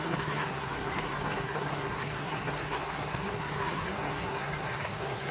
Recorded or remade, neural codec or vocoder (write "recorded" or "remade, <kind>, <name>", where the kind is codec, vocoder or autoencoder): remade, codec, SNAC